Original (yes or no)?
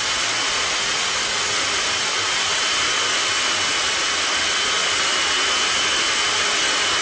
yes